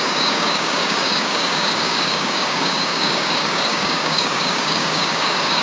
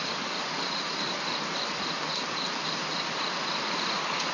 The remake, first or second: first